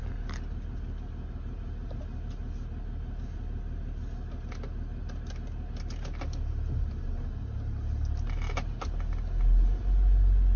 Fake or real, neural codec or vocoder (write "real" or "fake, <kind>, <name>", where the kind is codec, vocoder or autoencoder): real